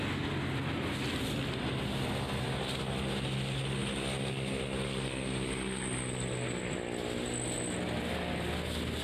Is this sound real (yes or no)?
yes